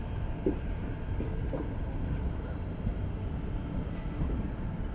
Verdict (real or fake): real